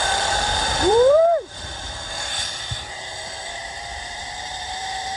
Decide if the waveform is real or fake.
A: fake